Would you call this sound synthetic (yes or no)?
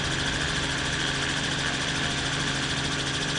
no